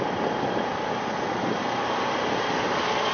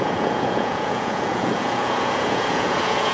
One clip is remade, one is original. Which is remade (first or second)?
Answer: second